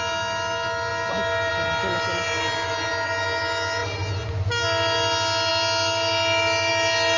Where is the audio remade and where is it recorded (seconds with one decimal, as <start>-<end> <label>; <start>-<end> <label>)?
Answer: 0.0-7.2 recorded